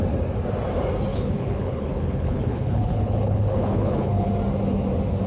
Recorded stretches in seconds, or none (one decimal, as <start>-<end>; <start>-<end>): 0.0-1.1; 4.3-5.3